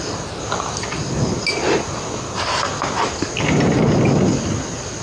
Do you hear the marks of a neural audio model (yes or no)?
no